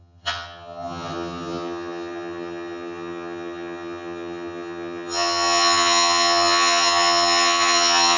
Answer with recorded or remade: remade